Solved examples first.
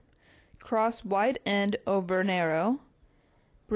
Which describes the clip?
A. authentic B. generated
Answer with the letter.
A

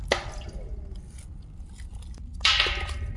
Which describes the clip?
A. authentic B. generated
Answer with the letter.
A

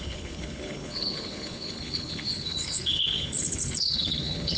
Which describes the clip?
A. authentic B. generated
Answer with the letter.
B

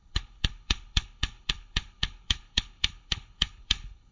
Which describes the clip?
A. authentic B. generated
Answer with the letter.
B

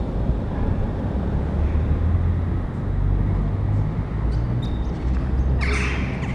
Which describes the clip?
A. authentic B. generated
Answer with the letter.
A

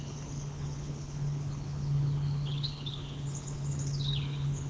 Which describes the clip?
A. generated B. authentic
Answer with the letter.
A